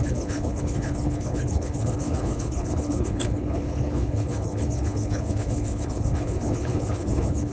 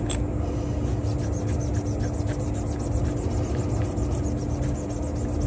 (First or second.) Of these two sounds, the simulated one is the first